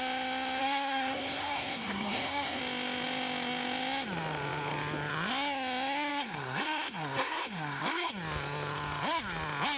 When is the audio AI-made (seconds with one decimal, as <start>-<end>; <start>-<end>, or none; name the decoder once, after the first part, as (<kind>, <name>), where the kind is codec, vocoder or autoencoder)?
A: 0.6-2.6 (codec, SNAC); 6.1-8.1